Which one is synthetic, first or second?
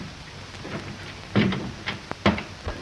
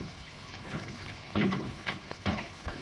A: second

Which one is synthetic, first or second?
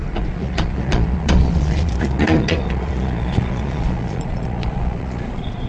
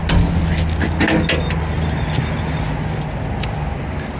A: first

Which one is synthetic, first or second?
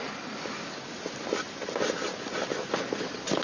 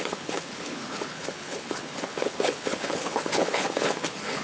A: second